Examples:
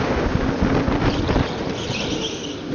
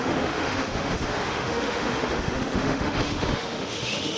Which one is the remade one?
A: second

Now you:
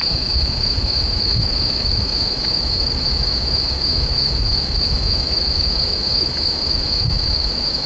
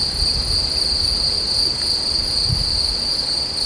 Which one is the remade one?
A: first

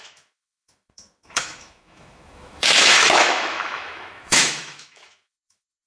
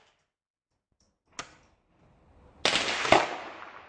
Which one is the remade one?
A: first